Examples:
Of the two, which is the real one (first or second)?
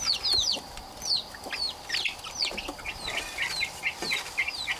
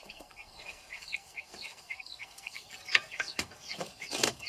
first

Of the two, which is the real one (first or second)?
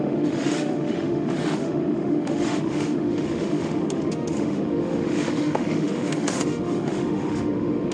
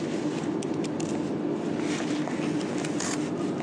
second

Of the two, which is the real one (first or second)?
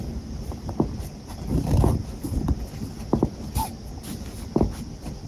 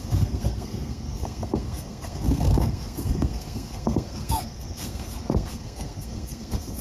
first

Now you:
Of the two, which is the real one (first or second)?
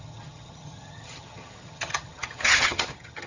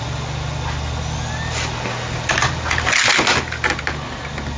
second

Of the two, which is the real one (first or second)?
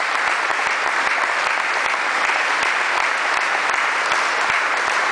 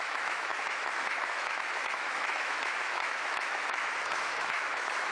first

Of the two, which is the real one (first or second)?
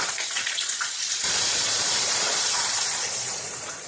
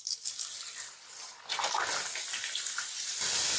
second